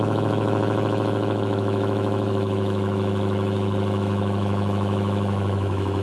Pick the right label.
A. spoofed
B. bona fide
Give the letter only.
A